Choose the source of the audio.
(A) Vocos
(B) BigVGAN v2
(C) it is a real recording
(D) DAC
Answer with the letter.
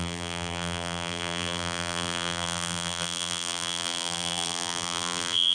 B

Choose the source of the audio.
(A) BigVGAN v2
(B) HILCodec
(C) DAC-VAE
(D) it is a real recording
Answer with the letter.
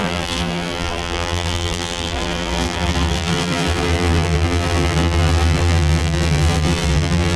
A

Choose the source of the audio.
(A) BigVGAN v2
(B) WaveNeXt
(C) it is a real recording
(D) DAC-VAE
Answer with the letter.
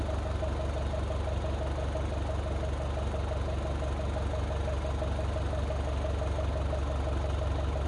C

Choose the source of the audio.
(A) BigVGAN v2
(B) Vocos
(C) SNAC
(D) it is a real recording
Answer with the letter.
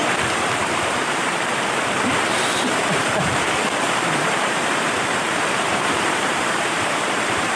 A